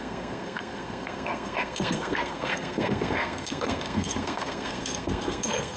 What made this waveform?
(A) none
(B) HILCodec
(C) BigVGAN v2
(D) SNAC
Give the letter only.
D